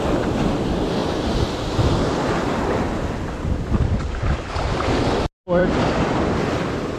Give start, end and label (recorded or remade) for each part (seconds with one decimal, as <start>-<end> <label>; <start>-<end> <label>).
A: 0.0-5.6 recorded; 5.6-6.2 remade; 6.2-7.0 recorded